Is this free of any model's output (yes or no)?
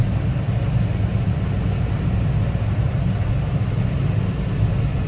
yes